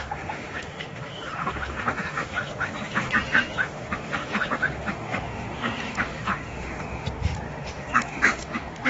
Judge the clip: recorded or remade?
remade